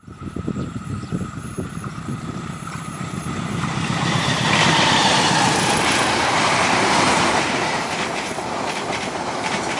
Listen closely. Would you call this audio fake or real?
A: fake